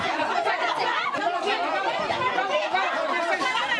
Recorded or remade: recorded